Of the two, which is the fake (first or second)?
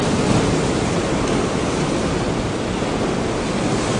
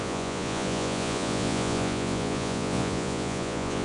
second